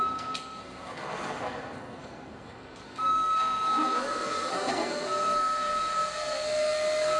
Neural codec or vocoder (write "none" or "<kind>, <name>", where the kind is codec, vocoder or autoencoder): codec, SNAC